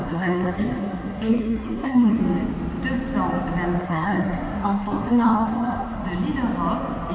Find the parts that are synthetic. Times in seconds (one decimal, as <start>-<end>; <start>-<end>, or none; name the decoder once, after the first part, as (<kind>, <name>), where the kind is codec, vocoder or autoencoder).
0.0-2.2 (codec, SNAC); 3.8-6.0